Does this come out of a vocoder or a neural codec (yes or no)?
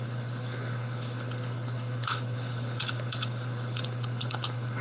yes